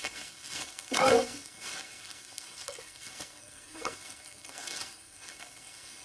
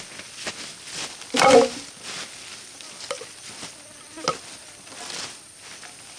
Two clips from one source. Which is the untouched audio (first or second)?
second